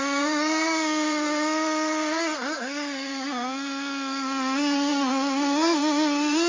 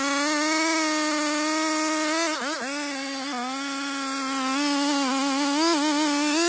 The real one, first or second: second